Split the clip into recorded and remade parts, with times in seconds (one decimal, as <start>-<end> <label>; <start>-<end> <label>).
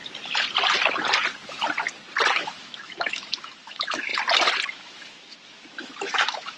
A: 0.0-2.3 recorded; 2.3-4.1 remade; 4.1-4.7 recorded; 4.7-6.6 remade